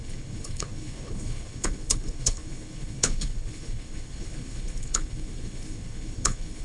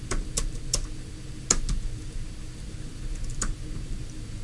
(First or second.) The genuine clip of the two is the second